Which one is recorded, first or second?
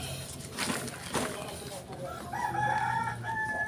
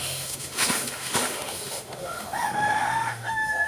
first